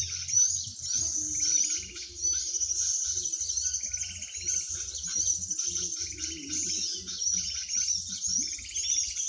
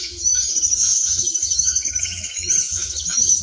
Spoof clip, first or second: second